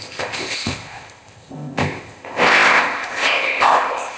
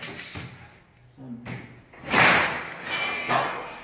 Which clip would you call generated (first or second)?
first